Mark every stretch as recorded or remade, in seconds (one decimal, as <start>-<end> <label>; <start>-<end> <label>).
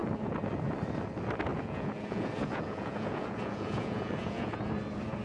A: 0.0-1.5 recorded; 1.5-4.6 remade; 4.6-5.2 recorded